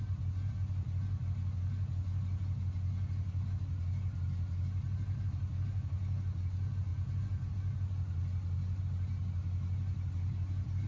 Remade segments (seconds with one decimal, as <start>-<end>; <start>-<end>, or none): none